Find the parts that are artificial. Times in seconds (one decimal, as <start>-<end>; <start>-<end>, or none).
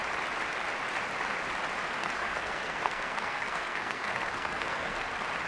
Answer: 2.0-5.1